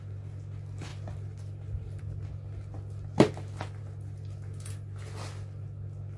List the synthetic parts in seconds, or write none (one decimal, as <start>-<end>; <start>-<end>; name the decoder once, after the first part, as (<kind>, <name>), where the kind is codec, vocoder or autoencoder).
none